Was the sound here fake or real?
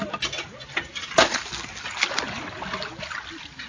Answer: real